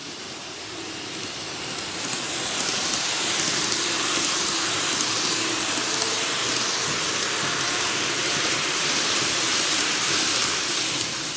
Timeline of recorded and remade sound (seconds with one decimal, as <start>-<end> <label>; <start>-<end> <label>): 0.0-6.4 remade; 6.4-7.7 recorded; 7.7-10.3 remade; 10.3-10.8 recorded; 10.8-11.4 remade